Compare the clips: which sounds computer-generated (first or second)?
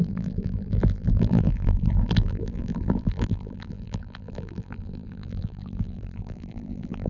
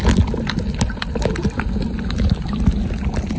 first